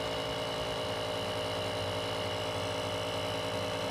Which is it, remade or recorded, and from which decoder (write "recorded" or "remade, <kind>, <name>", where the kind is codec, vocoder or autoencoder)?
recorded